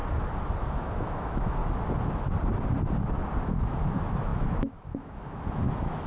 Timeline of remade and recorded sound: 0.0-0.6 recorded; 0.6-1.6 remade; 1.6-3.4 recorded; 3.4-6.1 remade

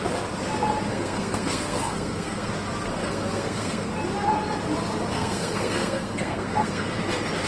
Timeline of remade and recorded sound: 0.0-0.9 recorded; 0.9-2.5 remade; 2.5-2.9 recorded; 2.9-3.9 remade; 3.9-5.1 recorded; 5.1-7.0 remade; 7.0-7.5 recorded

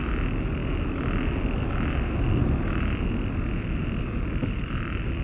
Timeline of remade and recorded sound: 0.0-5.2 recorded

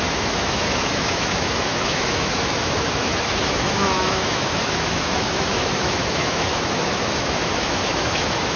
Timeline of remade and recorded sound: 0.0-8.6 remade

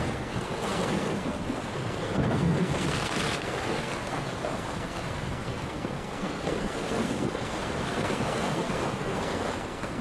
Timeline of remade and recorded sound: 0.0-10.0 remade

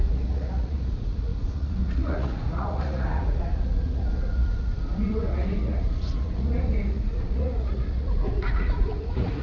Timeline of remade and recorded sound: 0.0-9.4 remade